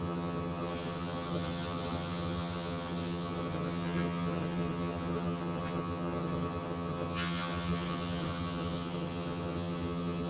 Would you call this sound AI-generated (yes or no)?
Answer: yes